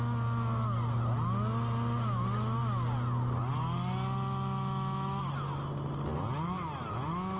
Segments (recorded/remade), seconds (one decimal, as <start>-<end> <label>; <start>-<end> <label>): 0.0-7.4 recorded